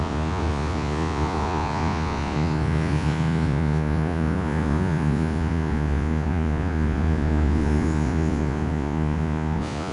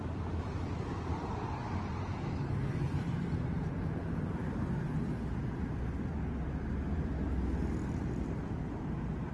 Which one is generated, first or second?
first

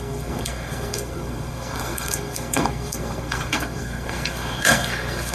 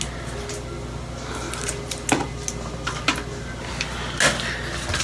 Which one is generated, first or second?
first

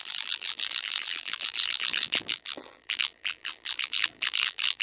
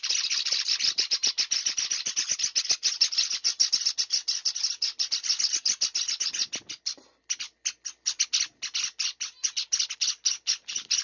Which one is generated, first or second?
first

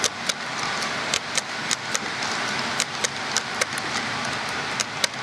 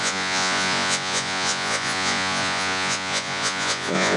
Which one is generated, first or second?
second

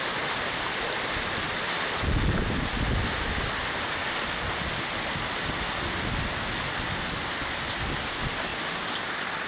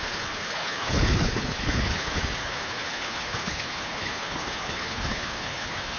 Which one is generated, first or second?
second